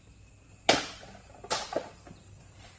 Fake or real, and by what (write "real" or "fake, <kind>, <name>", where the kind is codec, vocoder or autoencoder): real